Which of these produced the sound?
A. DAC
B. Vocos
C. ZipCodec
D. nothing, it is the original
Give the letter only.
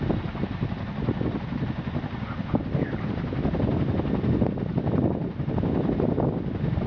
D